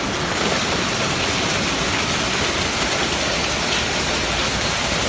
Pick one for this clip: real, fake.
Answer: real